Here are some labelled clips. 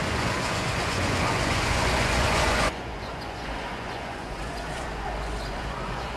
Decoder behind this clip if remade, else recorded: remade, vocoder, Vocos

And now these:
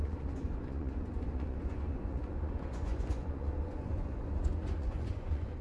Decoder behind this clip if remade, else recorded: remade, vocoder, Vocos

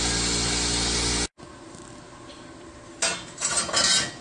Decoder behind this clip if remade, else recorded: recorded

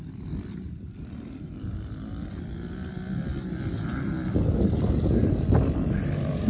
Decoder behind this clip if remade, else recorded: recorded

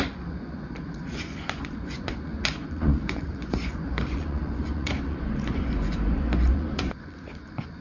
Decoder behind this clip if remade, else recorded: remade, vocoder, Vocos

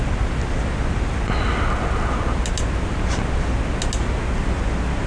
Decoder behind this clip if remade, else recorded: recorded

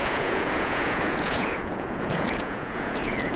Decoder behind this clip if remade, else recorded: remade, vocoder, Vocos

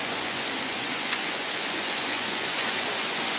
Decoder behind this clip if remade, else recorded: remade, vocoder, Vocos